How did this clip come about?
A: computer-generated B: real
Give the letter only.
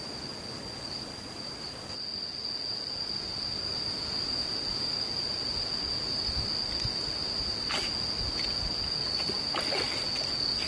B